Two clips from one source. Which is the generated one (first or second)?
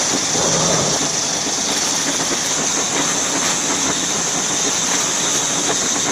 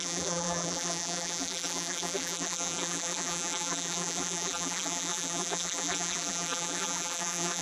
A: second